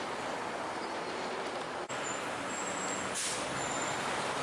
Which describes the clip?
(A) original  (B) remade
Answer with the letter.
A